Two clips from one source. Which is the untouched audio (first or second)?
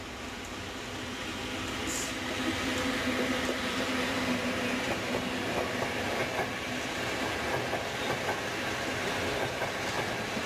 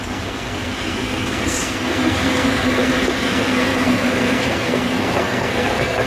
first